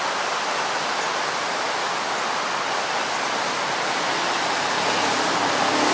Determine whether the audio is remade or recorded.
recorded